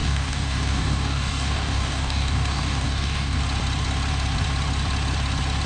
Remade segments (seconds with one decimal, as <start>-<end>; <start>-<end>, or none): 0.0-3.4